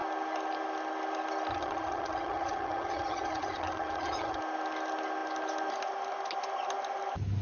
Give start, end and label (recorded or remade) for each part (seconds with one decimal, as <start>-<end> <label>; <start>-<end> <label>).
0.0-1.5 recorded; 1.5-4.4 remade; 4.4-7.4 recorded